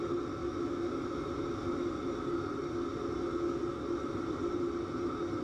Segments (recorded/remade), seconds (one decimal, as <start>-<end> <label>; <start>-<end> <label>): 0.0-0.4 recorded; 0.4-0.9 remade; 0.9-5.4 recorded